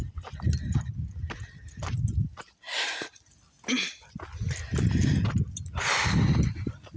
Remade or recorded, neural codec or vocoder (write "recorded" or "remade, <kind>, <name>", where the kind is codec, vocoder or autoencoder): recorded